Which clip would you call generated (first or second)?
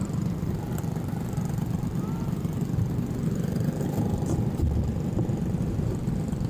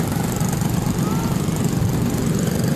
first